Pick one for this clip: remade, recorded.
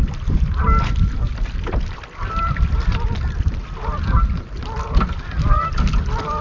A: remade